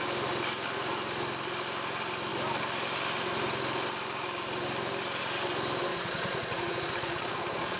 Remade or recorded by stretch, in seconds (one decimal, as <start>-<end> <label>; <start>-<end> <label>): 0.0-5.9 recorded; 5.9-7.8 remade